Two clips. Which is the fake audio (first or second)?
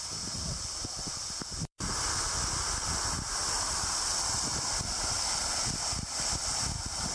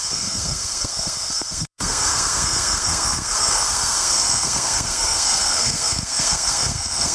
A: second